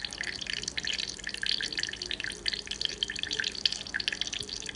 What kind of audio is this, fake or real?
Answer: real